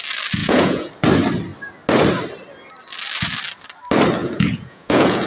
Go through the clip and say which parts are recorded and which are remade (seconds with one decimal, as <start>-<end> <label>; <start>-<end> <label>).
0.0-0.4 recorded; 0.4-0.9 remade; 0.9-4.2 recorded; 4.2-5.3 remade